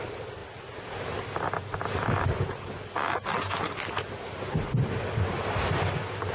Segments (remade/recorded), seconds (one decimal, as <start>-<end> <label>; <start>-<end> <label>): 0.0-6.3 recorded